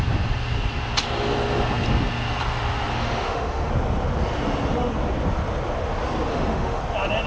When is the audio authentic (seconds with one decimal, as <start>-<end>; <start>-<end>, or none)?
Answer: 0.0-2.9; 3.7-6.3; 6.8-7.3